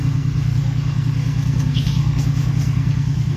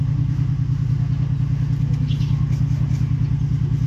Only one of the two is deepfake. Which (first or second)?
first